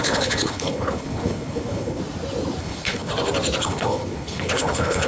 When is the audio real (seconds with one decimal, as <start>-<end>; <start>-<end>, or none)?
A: 2.0-2.6; 3.1-3.6